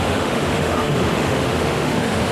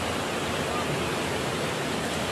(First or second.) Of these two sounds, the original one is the second